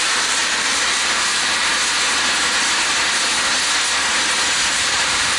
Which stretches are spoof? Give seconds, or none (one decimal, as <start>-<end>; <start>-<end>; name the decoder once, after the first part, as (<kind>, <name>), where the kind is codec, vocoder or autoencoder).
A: 0.0-1.7 (vocoder, BigVGAN v2); 4.7-5.4